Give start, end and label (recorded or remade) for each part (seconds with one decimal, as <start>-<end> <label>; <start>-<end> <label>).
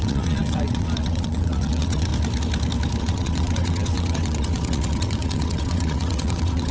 0.0-2.1 remade; 2.1-3.0 recorded; 3.0-6.7 remade